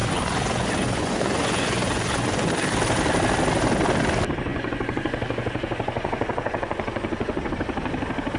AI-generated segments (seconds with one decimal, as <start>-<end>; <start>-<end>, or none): 0.0-2.5; 4.5-7.5